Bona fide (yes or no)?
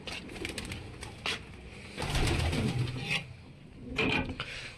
yes